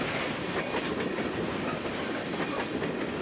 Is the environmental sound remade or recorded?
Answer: recorded